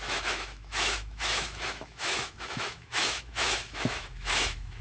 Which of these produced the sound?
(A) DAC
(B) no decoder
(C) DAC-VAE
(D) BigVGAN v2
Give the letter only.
C